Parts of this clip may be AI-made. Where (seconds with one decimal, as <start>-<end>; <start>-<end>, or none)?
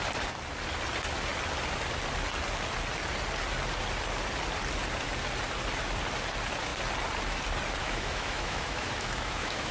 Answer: 7.8-9.7